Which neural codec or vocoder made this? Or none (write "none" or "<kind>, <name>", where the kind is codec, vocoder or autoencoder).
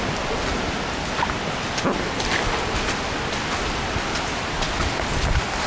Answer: none